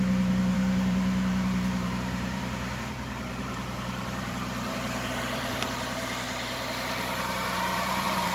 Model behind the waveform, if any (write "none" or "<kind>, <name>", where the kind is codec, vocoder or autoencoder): vocoder, BigVGAN v2